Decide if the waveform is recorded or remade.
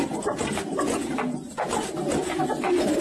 recorded